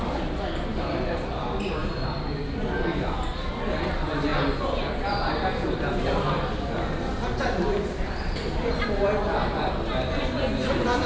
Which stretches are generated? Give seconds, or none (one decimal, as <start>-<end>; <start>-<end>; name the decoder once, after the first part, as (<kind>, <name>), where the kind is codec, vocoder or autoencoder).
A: none